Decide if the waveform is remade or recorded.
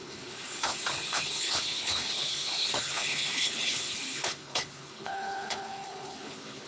remade